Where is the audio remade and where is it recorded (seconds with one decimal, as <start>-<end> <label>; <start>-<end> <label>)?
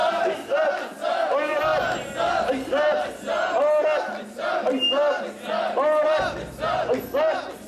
0.0-7.7 recorded